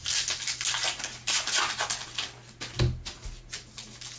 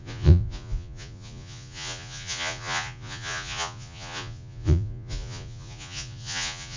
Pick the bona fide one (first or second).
first